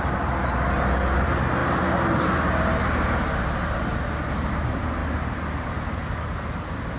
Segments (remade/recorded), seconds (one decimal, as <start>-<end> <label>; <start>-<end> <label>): 0.0-7.0 recorded